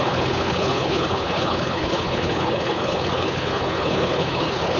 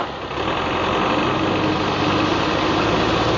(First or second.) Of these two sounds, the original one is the second